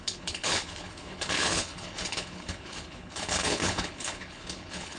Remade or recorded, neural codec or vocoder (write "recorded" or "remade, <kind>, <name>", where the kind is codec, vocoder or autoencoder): remade, codec, HILCodec